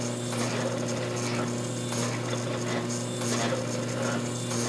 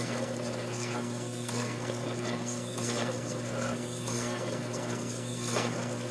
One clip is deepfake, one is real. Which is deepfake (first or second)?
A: second